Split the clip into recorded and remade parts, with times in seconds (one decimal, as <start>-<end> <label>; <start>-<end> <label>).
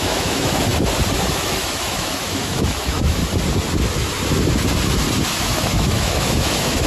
0.0-0.7 remade; 0.7-1.3 recorded; 1.3-3.2 remade; 3.2-5.4 recorded; 5.4-6.9 remade